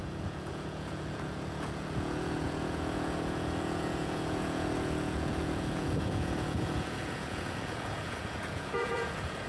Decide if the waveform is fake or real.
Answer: fake